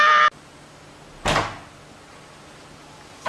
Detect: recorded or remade recorded